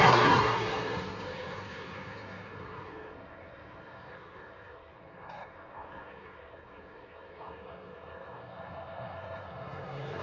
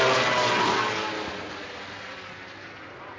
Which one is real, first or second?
second